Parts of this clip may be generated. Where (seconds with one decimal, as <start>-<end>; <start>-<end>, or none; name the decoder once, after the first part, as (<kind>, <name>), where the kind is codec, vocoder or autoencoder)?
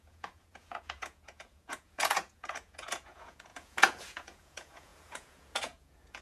0.0-6.2 (vocoder, Vocos)